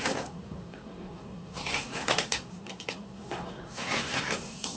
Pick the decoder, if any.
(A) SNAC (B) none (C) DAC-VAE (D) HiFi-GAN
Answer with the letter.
A